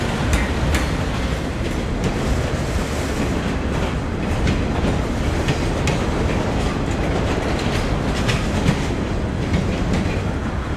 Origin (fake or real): real